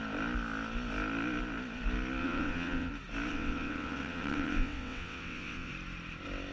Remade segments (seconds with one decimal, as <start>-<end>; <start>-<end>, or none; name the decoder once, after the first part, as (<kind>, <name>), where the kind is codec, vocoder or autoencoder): 2.2-2.9 (vocoder, WaveNeXt); 3.3-5.7